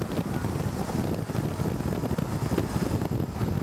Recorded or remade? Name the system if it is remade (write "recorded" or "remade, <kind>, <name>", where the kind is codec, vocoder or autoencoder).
recorded